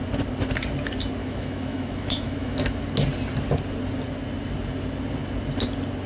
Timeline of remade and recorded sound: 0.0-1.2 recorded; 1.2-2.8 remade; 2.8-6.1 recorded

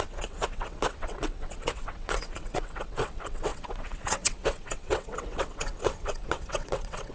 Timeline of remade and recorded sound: 0.0-7.1 remade

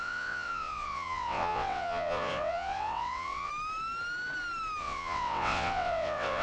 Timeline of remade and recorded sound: 0.0-3.5 remade; 3.5-4.8 recorded; 4.8-6.4 remade

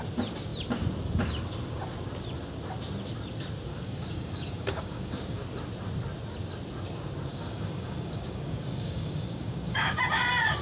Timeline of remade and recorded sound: 0.0-3.7 recorded; 3.7-5.4 remade; 5.4-7.3 recorded; 7.3-10.0 remade; 10.0-10.6 recorded

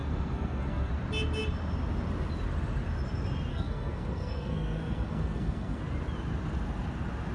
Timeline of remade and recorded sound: 0.0-0.9 remade; 0.9-3.5 recorded; 3.5-5.8 remade; 5.8-7.3 recorded

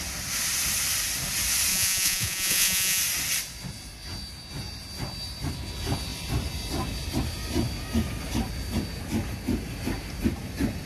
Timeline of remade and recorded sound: 0.0-1.7 recorded; 1.7-3.0 remade; 3.0-10.9 recorded

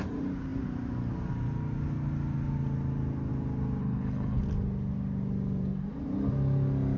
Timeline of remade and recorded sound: 0.0-3.8 recorded; 3.8-4.4 remade; 4.4-7.0 recorded

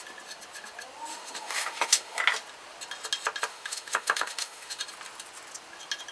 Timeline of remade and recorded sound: 0.0-1.1 recorded; 1.1-2.2 remade; 2.2-3.5 recorded; 3.5-4.8 remade; 4.8-6.1 recorded